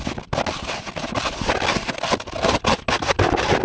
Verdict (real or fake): real